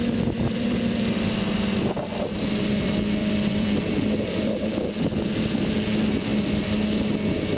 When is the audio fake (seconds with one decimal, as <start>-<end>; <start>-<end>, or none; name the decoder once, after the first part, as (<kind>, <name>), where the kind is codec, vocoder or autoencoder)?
0.0-0.9 (vocoder, BigVGAN v2); 3.2-5.6